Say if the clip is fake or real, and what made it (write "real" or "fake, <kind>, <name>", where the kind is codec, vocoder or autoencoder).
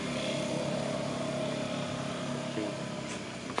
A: real